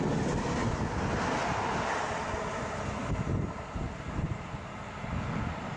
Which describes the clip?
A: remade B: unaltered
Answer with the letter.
B